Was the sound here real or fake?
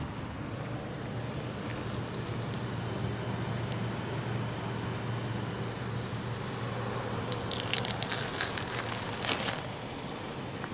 real